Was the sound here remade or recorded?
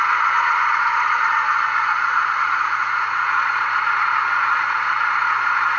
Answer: remade